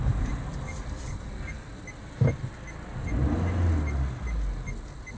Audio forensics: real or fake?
real